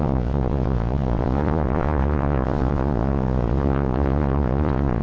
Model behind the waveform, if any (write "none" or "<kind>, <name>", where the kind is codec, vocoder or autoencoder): vocoder, Vocos